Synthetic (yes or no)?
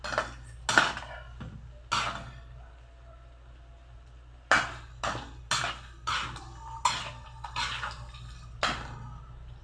no